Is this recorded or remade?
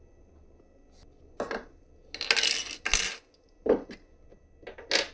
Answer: recorded